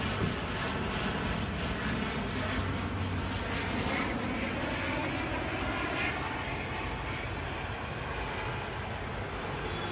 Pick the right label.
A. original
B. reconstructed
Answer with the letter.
A